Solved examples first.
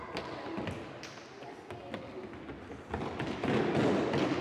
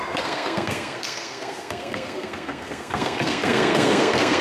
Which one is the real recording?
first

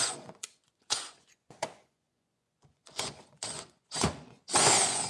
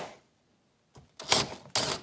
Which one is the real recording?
second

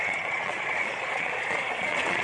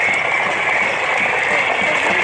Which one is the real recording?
second